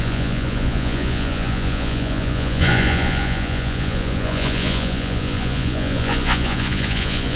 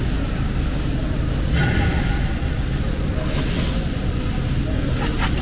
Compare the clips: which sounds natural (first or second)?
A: second